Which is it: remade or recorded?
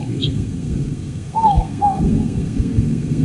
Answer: remade